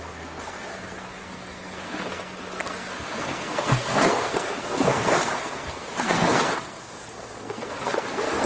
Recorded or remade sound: remade